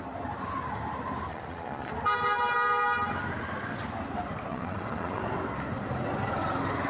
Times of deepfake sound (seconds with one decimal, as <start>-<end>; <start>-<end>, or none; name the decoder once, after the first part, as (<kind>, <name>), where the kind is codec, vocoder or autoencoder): 1.3-1.9 (vocoder, Vocos); 4.5-5.2